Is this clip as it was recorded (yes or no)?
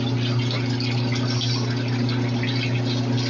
yes